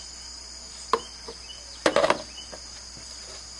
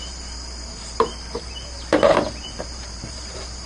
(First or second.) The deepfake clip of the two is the second